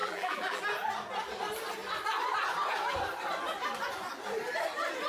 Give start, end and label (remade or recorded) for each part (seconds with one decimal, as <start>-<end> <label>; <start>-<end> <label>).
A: 0.0-0.6 remade; 0.6-5.1 recorded